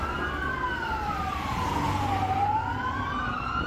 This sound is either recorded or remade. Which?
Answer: recorded